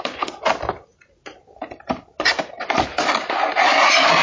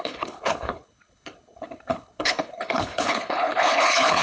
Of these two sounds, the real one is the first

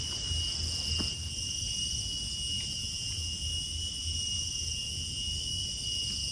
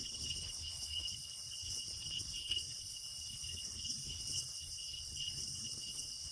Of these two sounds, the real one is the first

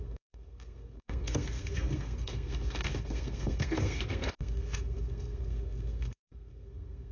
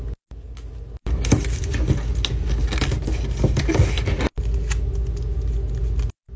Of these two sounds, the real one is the second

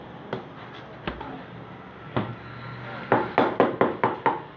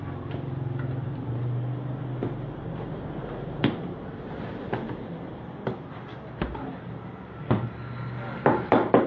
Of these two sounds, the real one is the first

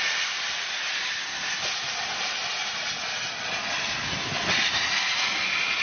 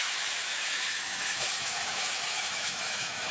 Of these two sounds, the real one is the first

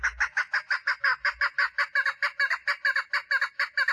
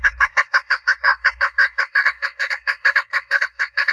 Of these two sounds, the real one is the first